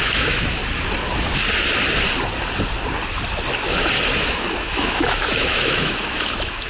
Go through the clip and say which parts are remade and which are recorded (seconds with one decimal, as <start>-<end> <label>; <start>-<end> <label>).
0.0-0.6 remade; 0.6-4.6 recorded; 4.6-6.7 remade